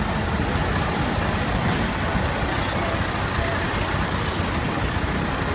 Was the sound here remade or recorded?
recorded